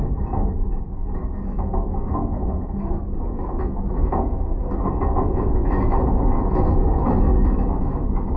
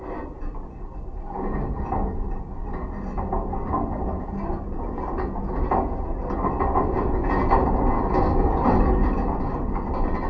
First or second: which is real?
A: second